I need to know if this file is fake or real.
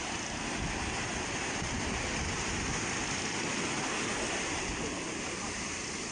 real